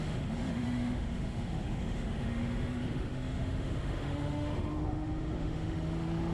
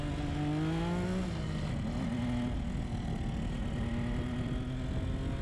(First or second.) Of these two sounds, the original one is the second